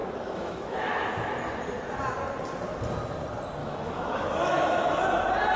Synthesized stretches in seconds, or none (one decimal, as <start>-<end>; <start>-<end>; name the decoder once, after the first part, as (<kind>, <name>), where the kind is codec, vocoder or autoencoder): 0.0-1.1 (autoencoder, DAC-VAE); 3.6-5.0